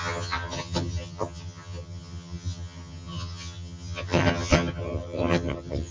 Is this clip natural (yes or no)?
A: no